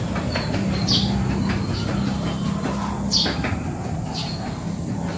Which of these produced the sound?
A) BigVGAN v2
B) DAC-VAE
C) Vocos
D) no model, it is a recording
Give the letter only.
D